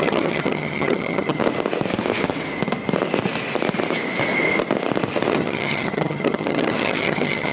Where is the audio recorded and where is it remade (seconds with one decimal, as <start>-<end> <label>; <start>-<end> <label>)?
0.0-1.4 remade; 1.4-5.3 recorded; 5.3-7.5 remade